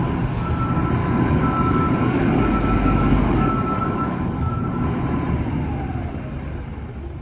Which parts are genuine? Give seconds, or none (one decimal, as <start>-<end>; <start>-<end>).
0.0-1.0; 4.6-7.2